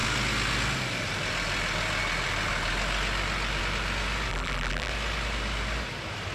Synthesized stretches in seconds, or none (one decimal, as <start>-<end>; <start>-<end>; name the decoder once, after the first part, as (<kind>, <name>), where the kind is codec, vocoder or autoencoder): 4.3-4.9 (vocoder, BigVGAN v2)